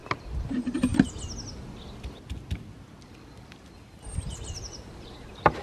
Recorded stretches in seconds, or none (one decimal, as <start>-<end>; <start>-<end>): 0.0-0.5; 0.9-3.5